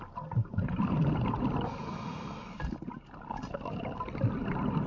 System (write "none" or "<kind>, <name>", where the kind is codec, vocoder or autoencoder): none